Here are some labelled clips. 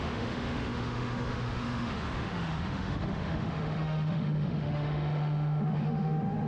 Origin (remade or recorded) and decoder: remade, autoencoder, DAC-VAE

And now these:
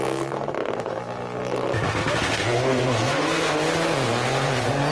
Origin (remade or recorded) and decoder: recorded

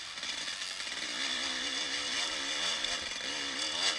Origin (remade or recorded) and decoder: recorded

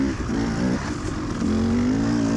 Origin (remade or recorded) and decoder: recorded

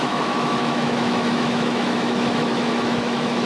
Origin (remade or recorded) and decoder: remade, autoencoder, DAC-VAE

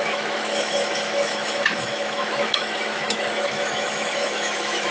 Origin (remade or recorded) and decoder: remade, autoencoder, DAC-VAE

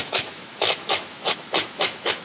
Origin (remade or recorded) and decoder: remade, autoencoder, DAC-VAE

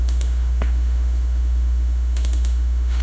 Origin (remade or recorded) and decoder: remade, autoencoder, DAC-VAE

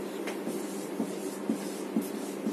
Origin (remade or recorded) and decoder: recorded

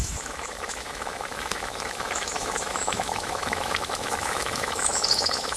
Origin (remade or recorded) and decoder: remade, autoencoder, DAC-VAE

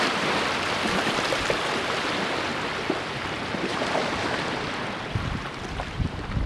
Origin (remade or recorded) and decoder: recorded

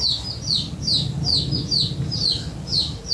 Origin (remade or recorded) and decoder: recorded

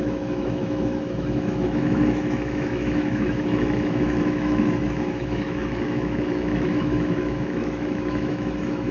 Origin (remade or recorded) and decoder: remade, autoencoder, DAC-VAE